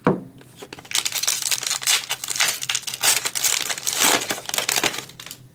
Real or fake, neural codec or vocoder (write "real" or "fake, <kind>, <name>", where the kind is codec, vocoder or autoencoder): real